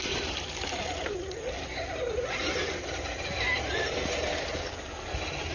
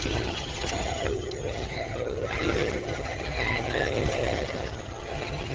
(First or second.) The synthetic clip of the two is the second